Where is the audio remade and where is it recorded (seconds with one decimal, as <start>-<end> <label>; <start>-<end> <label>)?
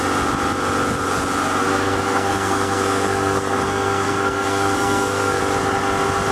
0.0-1.6 recorded; 1.6-5.4 remade; 5.4-6.3 recorded